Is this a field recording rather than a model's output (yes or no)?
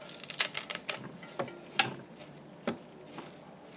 yes